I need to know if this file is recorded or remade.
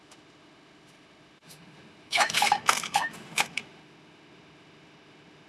remade